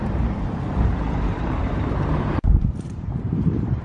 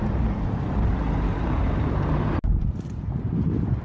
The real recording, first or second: second